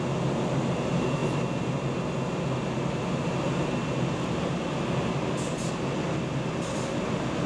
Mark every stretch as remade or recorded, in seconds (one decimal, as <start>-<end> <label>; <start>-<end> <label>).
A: 0.0-7.5 recorded